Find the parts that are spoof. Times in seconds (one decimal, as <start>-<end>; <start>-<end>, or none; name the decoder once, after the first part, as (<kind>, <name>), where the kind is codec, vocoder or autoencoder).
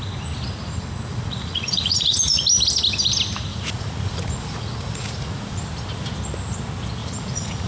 1.1-2.4 (vocoder, Vocos); 3.5-5.6; 7.0-7.7